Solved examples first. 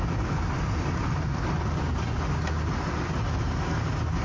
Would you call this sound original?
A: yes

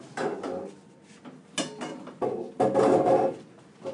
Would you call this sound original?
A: yes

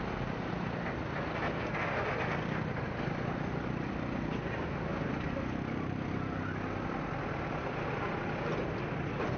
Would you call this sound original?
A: yes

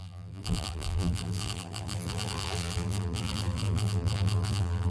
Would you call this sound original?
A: no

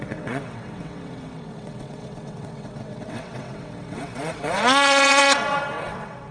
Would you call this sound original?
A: no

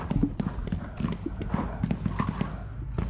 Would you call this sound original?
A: yes